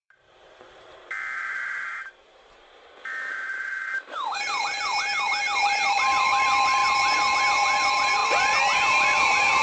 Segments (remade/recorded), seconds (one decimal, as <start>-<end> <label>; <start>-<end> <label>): 0.0-9.6 remade